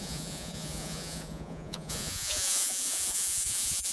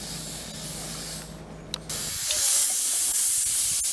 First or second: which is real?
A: second